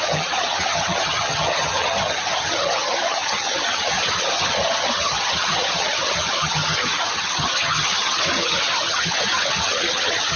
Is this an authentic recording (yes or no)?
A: no